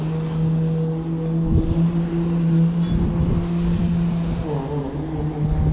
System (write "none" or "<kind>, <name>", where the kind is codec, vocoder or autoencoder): none